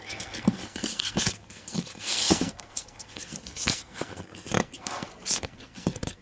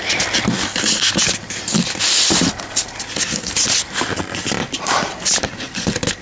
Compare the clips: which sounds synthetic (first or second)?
first